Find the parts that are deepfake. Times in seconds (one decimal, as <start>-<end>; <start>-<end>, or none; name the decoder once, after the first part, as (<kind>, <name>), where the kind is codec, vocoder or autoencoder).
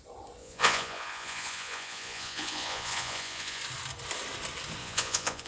0.4-3.6 (vocoder, Vocos); 4.8-5.5